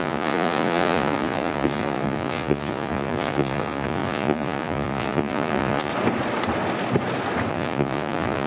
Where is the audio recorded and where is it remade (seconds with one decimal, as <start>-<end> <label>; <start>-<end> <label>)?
0.0-5.9 remade; 5.9-7.5 recorded; 7.5-8.5 remade